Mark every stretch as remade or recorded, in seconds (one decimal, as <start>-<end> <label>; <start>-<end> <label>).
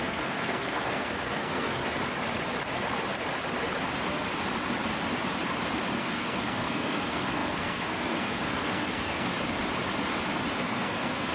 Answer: 0.0-1.8 remade; 1.8-6.0 recorded; 6.0-9.3 remade; 9.3-10.6 recorded; 10.6-11.3 remade